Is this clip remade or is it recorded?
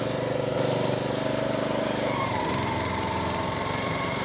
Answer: remade